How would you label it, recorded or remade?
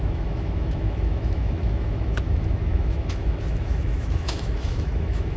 remade